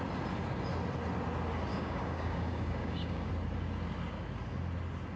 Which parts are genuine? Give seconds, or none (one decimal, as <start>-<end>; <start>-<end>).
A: 0.0-1.7; 3.3-5.2